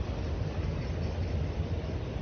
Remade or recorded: recorded